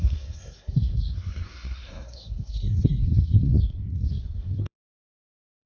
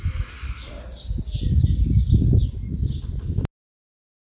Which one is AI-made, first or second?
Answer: first